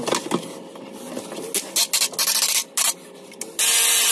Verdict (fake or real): real